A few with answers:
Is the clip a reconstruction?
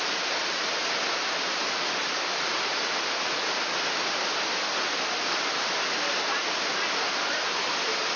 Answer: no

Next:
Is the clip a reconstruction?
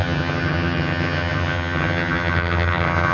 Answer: yes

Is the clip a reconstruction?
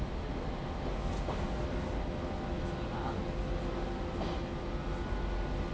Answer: no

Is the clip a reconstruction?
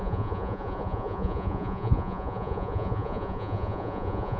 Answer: yes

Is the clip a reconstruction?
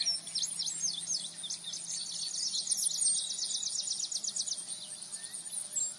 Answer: no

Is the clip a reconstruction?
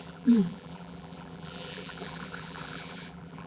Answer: yes